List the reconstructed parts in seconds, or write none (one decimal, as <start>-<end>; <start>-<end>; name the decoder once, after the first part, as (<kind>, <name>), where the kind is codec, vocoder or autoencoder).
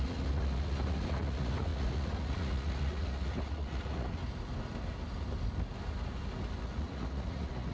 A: 0.0-4.2 (vocoder, Vocos); 6.6-7.7